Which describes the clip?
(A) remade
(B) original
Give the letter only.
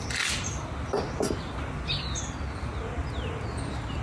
B